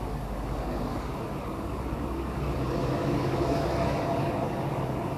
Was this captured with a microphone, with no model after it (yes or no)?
no